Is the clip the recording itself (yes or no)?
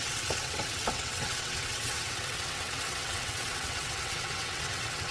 no